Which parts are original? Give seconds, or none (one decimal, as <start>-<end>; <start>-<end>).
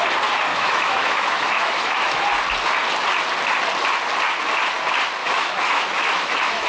0.0-0.5; 2.2-5.2